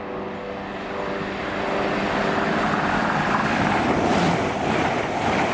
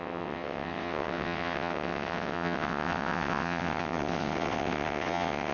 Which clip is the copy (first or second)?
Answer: second